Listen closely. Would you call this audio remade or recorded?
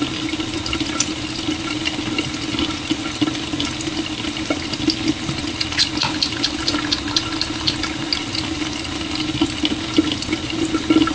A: recorded